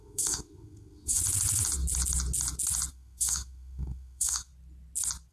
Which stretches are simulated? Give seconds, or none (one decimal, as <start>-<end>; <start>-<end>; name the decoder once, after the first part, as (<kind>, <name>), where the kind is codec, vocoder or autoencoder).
0.0-1.2 (autoencoder, DAC-VAE); 2.9-4.5